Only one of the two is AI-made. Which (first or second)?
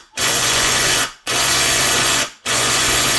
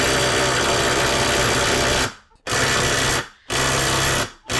first